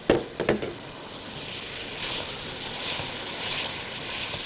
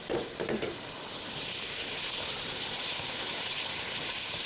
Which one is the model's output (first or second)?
second